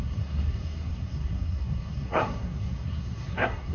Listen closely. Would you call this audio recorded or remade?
remade